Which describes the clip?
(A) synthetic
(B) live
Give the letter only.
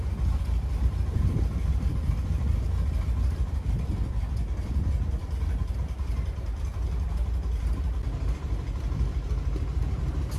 A